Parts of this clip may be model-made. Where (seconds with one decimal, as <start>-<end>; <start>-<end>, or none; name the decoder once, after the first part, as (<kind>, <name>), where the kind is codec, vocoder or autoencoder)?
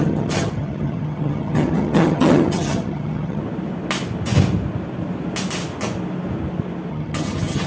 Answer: 0.0-3.4 (vocoder, HiFi-GAN); 6.9-7.7